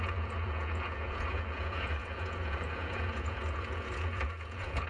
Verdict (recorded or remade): remade